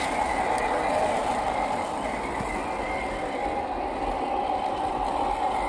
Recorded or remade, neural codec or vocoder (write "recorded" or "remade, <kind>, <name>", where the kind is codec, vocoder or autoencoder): recorded